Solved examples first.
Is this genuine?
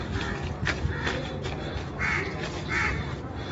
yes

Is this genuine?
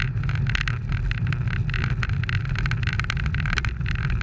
yes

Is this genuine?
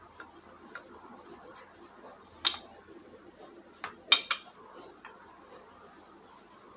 yes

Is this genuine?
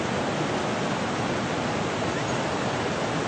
yes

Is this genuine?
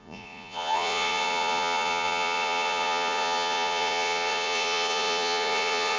no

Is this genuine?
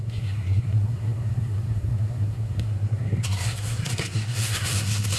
no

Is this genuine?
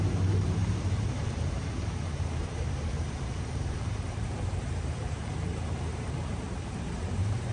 no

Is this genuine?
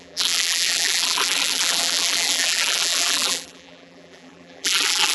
no